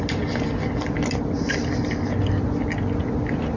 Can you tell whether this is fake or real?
real